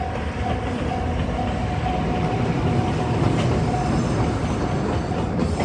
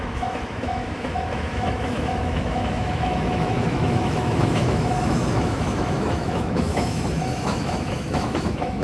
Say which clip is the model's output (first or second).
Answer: second